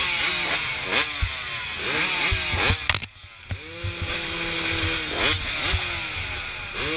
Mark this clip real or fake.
real